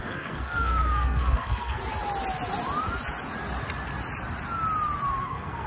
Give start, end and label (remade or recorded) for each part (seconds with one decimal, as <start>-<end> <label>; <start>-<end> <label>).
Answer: 0.0-1.8 remade; 1.8-5.2 recorded; 5.2-5.7 remade

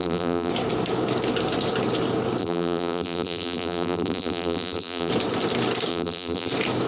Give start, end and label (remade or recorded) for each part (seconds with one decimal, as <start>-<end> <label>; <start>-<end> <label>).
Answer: 0.0-0.5 remade; 0.5-2.4 recorded; 2.4-5.1 remade; 5.1-5.9 recorded; 5.9-6.5 remade; 6.5-6.9 recorded

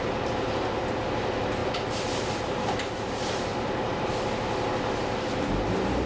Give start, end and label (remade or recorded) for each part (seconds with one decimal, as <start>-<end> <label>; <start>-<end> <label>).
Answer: 0.0-1.6 recorded; 1.6-3.1 remade; 3.1-3.5 recorded; 3.5-4.1 remade; 4.1-6.1 recorded

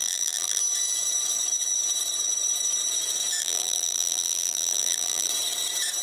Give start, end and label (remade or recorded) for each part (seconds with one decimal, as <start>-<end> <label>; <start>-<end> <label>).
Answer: 0.0-0.6 remade; 0.6-3.4 recorded; 3.4-5.3 remade; 5.3-6.0 recorded

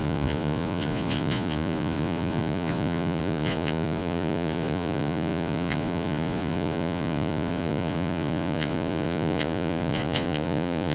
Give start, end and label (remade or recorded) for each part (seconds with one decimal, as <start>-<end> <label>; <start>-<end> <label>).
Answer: 0.0-10.9 remade

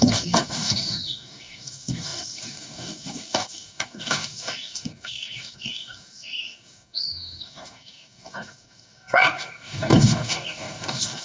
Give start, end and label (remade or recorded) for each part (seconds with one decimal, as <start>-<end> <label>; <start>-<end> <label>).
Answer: 0.0-11.2 remade

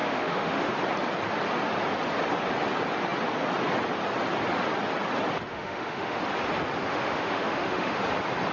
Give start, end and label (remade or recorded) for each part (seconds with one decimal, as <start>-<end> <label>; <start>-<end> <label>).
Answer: 0.0-0.7 remade; 0.7-5.5 recorded; 5.5-6.2 remade; 6.2-6.9 recorded; 6.9-8.0 remade; 8.0-8.5 recorded

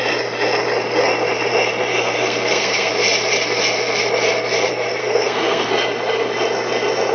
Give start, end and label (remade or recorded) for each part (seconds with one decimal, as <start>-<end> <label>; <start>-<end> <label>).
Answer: 0.0-1.9 recorded; 1.9-2.9 remade; 2.9-5.0 recorded; 5.0-5.7 remade; 5.7-7.1 recorded